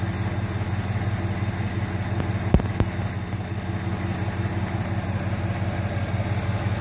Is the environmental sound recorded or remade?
recorded